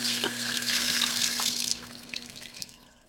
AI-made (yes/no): yes